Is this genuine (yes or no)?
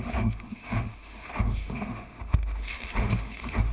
no